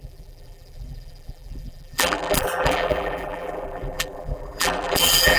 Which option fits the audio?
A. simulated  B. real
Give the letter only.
A